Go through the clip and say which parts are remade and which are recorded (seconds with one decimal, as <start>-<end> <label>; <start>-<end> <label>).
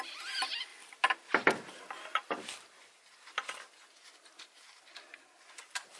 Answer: 0.0-6.0 recorded